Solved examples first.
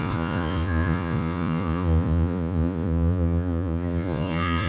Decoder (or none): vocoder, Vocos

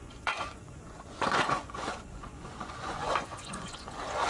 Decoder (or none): vocoder, Vocos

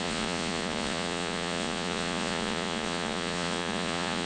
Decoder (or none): vocoder, Vocos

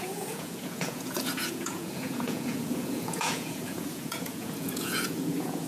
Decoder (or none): vocoder, Vocos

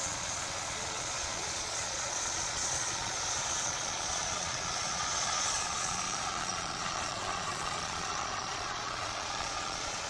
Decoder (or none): vocoder, Vocos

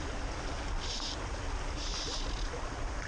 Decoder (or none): none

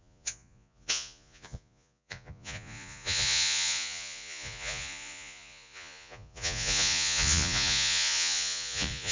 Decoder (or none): vocoder, Vocos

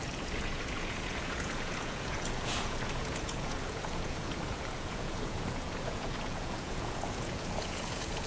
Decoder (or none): vocoder, Vocos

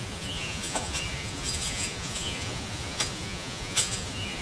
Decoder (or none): vocoder, Vocos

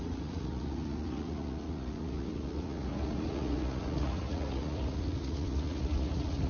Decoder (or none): vocoder, Vocos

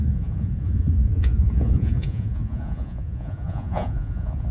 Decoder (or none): vocoder, Vocos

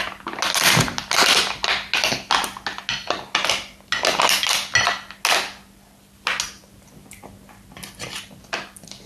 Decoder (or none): none